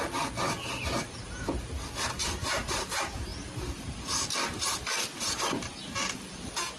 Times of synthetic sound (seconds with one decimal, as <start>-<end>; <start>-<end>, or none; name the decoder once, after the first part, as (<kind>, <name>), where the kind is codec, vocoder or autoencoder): none